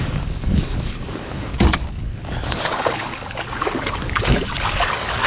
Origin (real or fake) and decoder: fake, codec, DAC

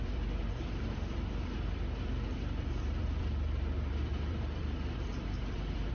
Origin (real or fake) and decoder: fake, vocoder, BigVGAN v2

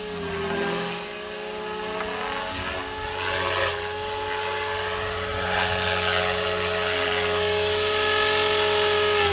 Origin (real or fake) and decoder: real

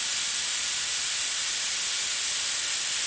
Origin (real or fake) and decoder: real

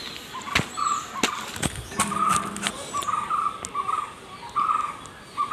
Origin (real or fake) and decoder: real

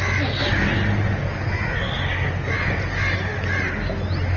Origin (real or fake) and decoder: real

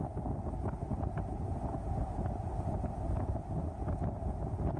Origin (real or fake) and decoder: real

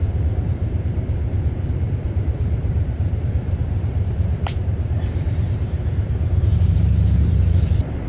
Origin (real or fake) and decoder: fake, vocoder, BigVGAN v2